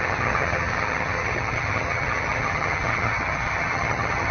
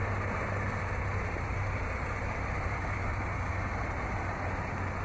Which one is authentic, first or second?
second